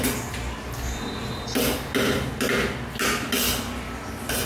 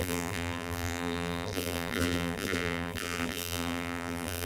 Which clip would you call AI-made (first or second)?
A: second